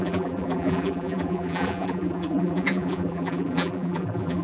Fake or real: fake